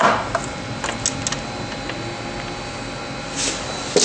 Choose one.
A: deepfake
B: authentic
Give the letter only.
B